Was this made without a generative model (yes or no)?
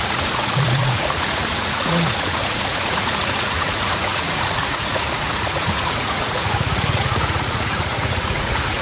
no